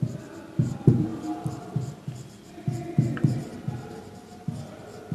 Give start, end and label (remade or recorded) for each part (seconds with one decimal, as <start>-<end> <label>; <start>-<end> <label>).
0.0-5.1 recorded